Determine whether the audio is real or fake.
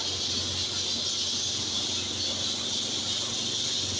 real